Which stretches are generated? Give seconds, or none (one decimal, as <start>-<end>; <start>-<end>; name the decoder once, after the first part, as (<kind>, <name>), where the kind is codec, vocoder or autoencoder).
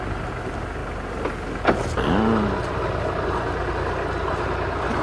none